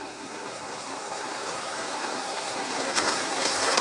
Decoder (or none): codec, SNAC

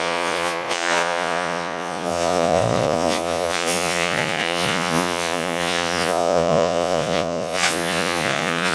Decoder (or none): vocoder, Vocos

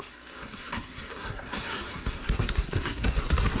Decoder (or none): codec, SNAC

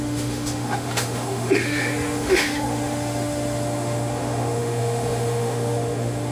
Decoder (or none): autoencoder, DAC-VAE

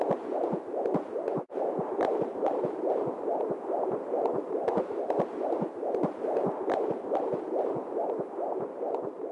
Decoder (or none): vocoder, BigVGAN v2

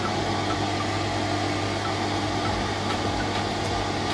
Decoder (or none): none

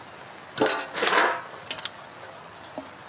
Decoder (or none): none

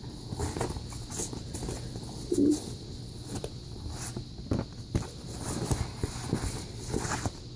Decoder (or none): none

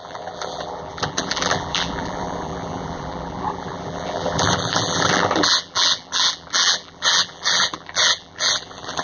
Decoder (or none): vocoder, BigVGAN v2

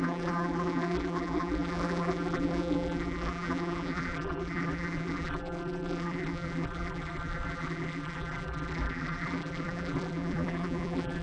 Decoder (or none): vocoder, BigVGAN v2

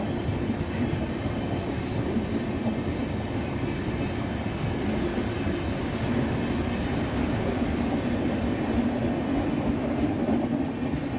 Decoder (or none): none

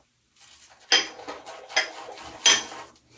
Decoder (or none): none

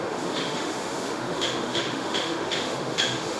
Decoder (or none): autoencoder, DAC-VAE